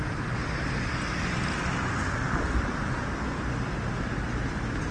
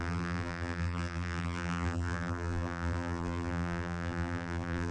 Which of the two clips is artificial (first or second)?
second